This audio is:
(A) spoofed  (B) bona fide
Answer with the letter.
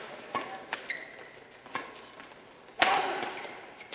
B